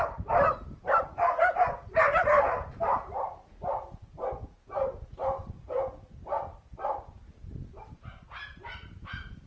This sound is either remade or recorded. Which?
remade